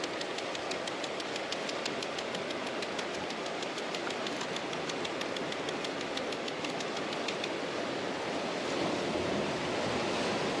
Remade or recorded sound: recorded